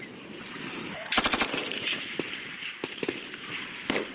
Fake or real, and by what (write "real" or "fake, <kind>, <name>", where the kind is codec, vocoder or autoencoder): fake, vocoder, BigVGAN v2